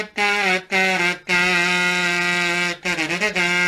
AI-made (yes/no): no